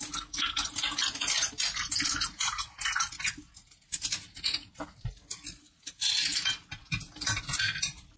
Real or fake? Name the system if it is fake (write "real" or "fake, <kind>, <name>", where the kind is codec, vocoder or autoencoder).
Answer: real